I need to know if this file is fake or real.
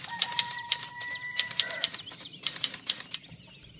fake